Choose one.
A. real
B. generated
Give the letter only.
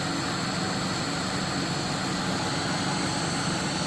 A